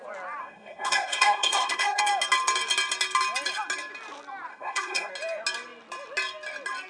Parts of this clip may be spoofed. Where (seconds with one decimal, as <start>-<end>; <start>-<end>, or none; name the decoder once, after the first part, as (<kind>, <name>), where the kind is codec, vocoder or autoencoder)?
0.4-2.0 (codec, SNAC); 4.5-5.1